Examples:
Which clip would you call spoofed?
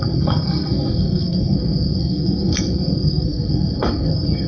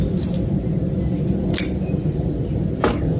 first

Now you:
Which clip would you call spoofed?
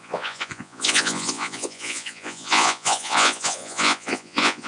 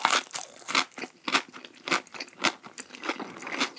first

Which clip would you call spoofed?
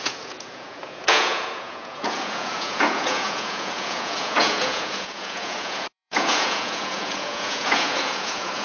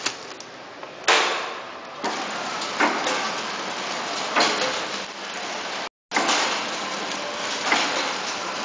first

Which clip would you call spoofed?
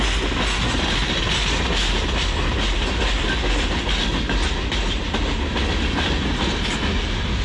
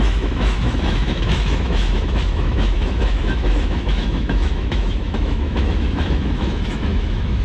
second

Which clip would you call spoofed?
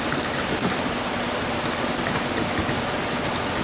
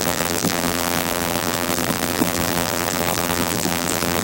second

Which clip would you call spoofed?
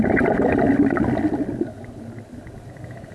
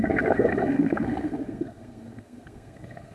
second